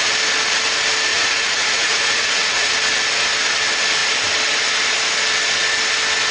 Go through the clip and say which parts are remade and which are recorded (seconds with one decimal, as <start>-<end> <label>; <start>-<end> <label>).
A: 0.0-1.1 recorded; 1.1-2.7 remade; 2.7-6.3 recorded